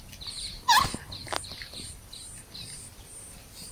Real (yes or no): yes